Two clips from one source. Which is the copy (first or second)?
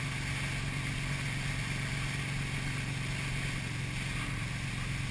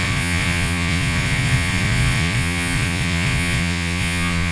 second